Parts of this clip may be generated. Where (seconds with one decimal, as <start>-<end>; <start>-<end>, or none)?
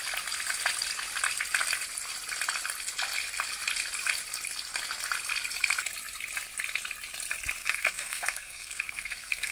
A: 7.6-9.5